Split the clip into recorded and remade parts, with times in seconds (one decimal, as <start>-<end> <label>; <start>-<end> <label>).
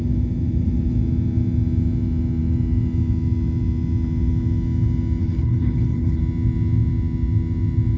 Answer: 0.0-5.2 recorded; 5.2-6.2 remade; 6.2-8.0 recorded